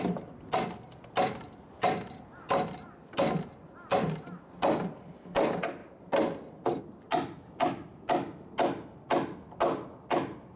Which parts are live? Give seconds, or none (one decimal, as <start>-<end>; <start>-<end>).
0.0-10.6